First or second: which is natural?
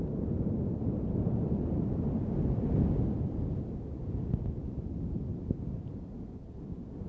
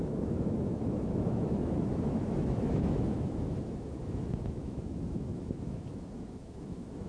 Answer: first